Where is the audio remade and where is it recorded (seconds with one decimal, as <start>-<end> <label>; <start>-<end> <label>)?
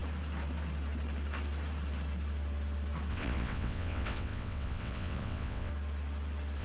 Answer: 0.0-3.1 recorded; 3.1-5.7 remade; 5.7-6.6 recorded